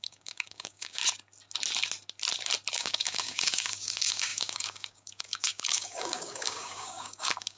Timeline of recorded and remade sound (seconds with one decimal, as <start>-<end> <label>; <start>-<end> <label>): 0.0-1.0 remade; 1.0-2.7 recorded; 2.7-7.6 remade